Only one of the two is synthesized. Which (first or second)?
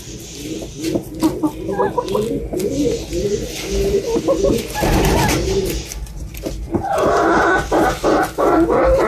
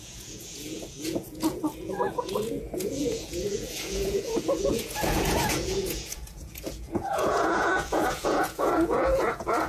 second